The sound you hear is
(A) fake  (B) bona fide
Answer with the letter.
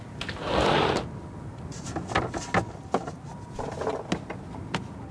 B